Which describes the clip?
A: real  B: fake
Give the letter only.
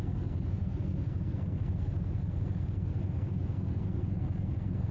B